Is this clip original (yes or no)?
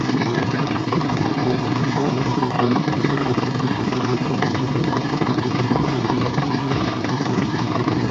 no